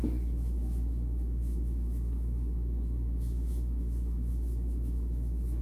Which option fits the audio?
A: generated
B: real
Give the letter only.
A